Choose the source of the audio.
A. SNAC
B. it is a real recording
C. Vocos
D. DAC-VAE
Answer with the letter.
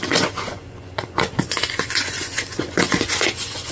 C